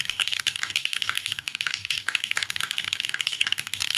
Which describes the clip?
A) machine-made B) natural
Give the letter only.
A